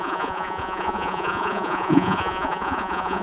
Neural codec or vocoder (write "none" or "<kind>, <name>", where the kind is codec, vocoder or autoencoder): vocoder, Vocos